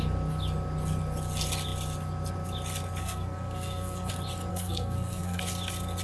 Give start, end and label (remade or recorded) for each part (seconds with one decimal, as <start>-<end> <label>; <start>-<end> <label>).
0.0-3.0 recorded; 3.0-4.1 remade; 4.1-4.5 recorded; 4.5-5.4 remade; 5.4-6.0 recorded